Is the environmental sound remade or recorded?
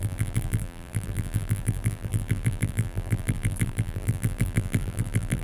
remade